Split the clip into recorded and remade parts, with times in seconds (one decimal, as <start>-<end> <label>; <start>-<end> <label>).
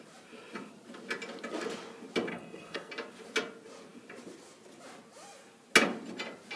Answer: 0.0-2.3 recorded; 2.3-2.9 remade; 2.9-6.6 recorded